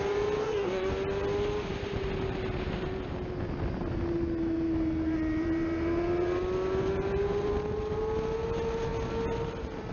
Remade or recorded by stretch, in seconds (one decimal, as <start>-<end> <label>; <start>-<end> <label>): 0.0-0.4 recorded; 0.4-0.9 remade; 0.9-9.9 recorded